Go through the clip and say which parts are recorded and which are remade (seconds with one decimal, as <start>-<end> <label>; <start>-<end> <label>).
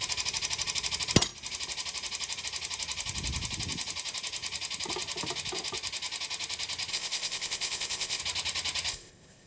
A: 0.0-6.9 recorded; 6.9-8.2 remade; 8.2-8.9 recorded; 8.9-9.5 remade